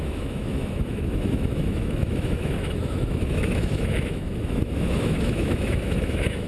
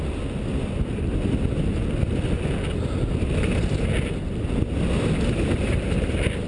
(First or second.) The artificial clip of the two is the first